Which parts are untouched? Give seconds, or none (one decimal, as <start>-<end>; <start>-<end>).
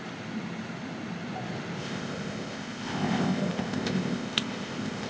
0.0-1.8